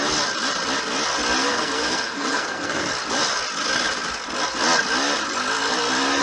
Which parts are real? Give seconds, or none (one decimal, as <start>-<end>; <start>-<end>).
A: 0.0-1.4; 2.9-6.2

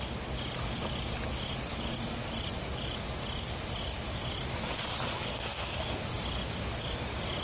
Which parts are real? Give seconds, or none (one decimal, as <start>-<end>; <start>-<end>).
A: 0.0-5.3; 6.0-7.4

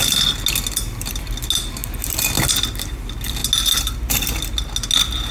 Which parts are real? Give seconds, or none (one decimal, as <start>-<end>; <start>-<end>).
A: 0.0-5.3

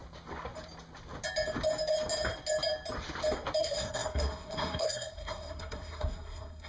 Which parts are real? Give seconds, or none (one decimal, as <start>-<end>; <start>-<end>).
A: 0.0-3.6